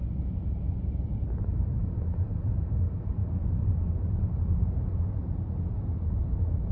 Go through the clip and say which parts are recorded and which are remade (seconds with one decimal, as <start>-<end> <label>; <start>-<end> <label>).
0.0-6.7 recorded

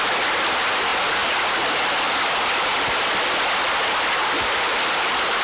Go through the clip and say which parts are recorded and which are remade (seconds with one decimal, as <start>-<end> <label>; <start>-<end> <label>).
0.0-5.4 recorded

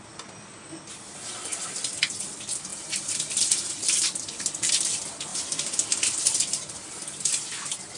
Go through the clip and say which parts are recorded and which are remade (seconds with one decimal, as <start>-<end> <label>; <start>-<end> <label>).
0.0-1.5 recorded; 1.5-2.1 remade; 2.1-2.7 recorded; 2.7-4.7 remade; 4.7-5.3 recorded; 5.3-6.6 remade; 6.6-8.0 recorded